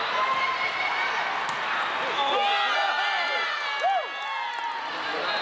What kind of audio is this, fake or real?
real